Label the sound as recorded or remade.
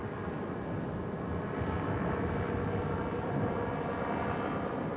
recorded